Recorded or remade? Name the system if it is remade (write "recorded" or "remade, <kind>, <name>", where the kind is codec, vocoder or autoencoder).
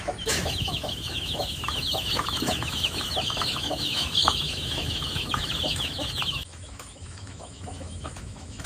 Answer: remade, autoencoder, DAC-VAE